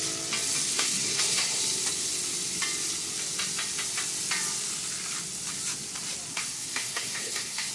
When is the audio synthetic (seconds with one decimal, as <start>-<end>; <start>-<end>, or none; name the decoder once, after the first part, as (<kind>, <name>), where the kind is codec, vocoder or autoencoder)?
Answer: 0.7-1.6 (codec, SNAC); 6.3-7.7